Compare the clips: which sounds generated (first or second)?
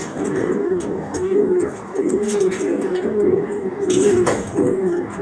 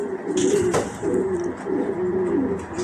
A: first